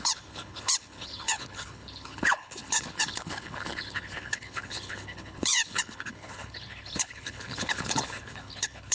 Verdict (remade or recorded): remade